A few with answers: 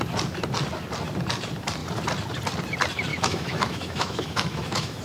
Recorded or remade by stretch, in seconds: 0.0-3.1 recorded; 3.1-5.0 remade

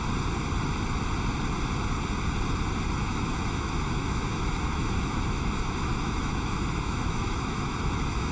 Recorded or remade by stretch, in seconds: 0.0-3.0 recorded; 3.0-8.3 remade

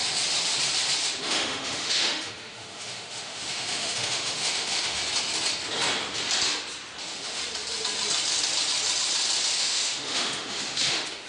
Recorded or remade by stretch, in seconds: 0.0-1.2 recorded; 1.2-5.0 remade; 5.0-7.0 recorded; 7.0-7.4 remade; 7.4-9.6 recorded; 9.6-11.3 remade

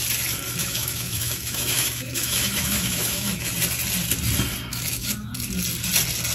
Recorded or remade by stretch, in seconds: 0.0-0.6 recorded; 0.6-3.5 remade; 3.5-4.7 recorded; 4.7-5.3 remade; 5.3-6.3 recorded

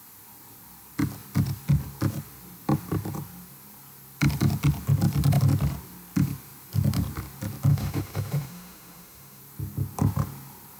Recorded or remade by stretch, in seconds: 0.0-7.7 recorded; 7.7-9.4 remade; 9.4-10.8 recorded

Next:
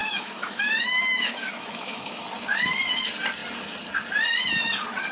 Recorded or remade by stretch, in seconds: 0.0-2.2 remade; 2.2-5.1 recorded